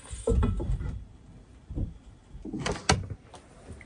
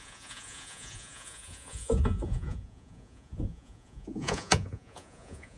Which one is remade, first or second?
second